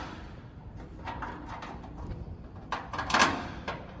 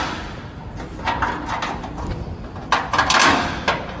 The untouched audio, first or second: second